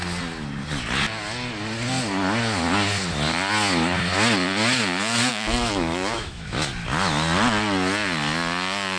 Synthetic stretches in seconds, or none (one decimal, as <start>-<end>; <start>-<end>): 5.3-6.7

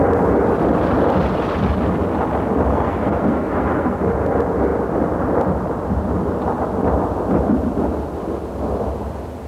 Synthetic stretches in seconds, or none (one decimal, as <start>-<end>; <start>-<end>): 2.7-4.0

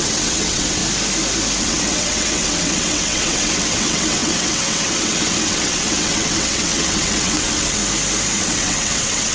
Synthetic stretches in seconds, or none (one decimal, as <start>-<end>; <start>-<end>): 0.0-0.8; 1.6-7.8; 8.4-9.3

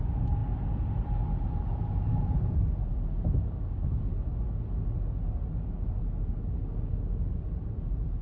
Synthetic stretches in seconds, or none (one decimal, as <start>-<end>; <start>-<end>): none